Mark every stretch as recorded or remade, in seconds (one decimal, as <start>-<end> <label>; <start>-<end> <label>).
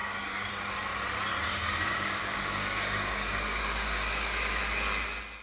0.0-0.5 remade; 0.5-1.5 recorded; 1.5-4.6 remade; 4.6-5.4 recorded